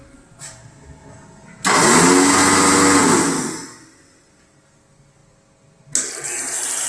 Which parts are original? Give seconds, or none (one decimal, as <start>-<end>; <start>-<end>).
0.0-6.9